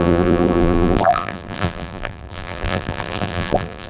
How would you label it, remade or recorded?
remade